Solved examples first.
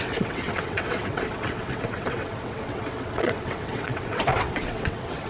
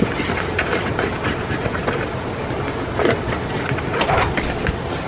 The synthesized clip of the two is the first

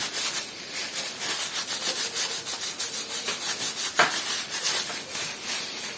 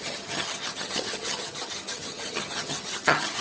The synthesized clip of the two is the second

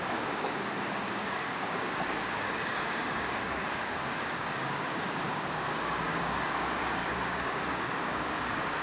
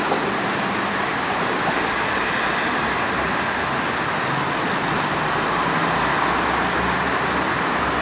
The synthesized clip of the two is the first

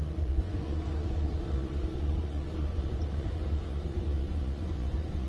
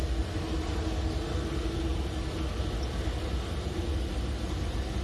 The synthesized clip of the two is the first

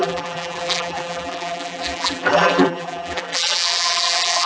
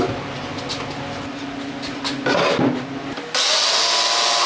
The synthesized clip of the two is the first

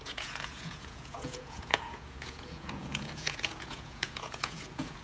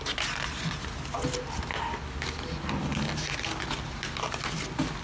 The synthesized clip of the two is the first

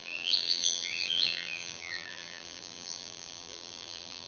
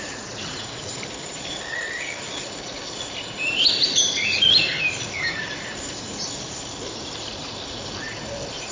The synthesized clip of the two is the first